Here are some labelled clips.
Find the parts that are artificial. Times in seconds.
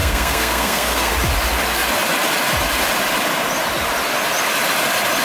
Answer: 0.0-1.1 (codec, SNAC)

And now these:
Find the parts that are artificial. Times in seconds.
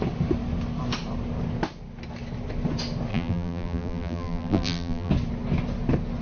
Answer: 3.1-5.1 (vocoder, BigVGAN v2)